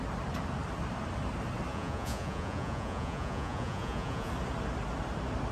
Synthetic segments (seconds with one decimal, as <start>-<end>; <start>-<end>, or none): 1.7-4.3